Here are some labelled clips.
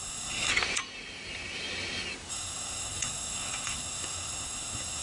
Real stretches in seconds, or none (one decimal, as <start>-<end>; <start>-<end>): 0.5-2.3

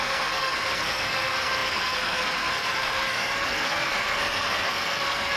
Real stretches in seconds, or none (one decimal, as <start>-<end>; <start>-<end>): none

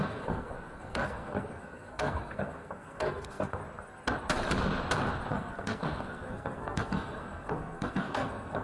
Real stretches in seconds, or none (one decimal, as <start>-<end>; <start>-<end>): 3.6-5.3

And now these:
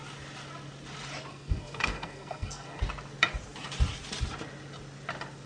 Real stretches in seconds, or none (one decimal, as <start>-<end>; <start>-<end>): 0.0-1.3; 2.8-5.5

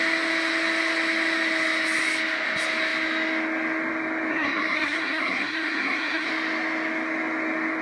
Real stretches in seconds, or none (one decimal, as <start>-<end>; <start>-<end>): 0.0-4.3; 6.3-7.8